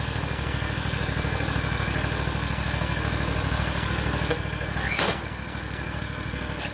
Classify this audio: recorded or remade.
remade